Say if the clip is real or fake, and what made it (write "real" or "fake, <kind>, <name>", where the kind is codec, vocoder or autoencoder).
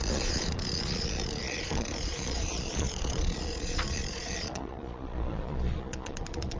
fake, vocoder, Vocos